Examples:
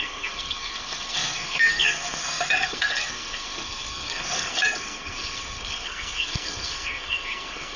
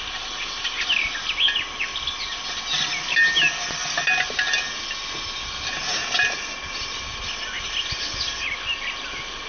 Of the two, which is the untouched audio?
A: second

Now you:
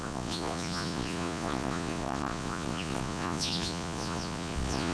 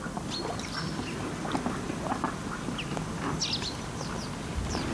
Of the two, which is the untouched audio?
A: second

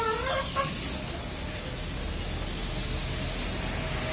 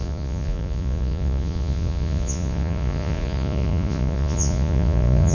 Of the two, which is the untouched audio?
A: first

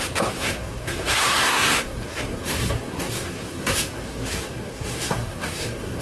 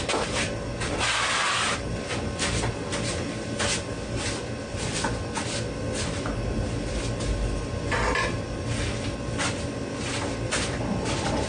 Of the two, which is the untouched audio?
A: second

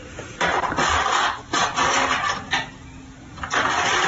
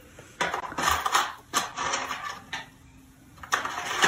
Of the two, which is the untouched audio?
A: second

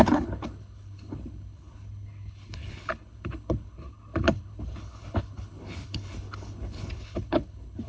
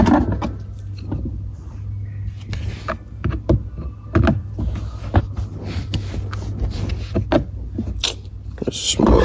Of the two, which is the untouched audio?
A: second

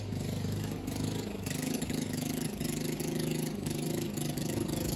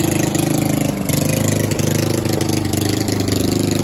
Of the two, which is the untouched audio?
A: second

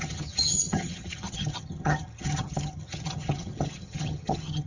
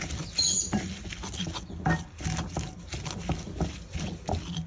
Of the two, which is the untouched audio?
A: second